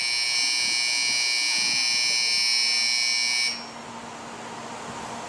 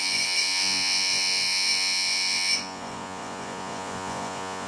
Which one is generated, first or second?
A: second